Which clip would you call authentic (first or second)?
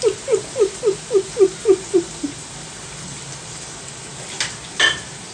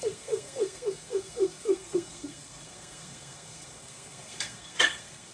first